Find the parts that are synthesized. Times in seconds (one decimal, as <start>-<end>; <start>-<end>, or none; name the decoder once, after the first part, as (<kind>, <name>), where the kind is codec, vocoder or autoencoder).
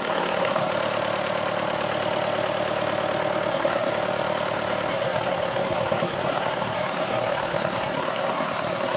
0.0-0.7 (codec, SNAC); 3.5-3.9; 4.9-9.0